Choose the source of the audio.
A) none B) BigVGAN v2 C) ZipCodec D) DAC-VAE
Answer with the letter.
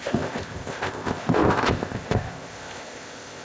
C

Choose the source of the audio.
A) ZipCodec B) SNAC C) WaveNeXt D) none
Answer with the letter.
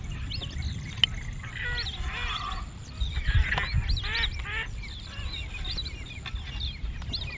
D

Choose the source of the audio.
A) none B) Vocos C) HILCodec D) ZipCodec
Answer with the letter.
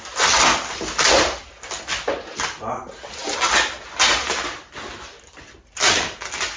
A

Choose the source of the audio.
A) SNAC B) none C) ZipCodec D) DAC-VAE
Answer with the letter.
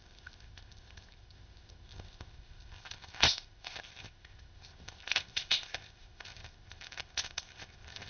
C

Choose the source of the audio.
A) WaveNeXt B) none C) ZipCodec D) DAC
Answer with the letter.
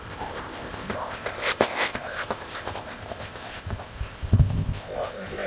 C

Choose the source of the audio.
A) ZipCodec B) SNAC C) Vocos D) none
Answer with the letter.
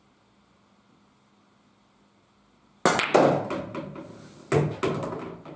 D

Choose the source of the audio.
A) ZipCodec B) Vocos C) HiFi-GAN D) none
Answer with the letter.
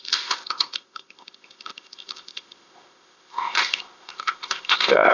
A